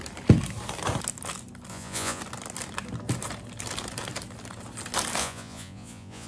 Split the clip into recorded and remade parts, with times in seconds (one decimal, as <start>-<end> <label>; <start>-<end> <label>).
0.0-1.7 recorded; 1.7-2.2 remade; 2.2-5.2 recorded; 5.2-6.3 remade